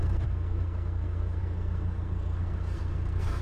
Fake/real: fake